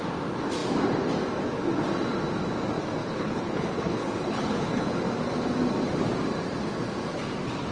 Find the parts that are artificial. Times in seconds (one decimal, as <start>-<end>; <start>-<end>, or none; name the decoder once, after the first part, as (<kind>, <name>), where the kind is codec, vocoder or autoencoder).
3.0-5.0 (codec, HILCodec)